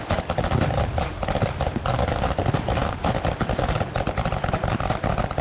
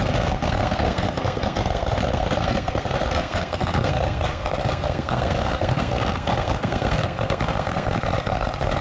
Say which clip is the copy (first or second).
second